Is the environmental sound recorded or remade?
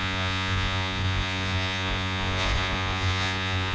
remade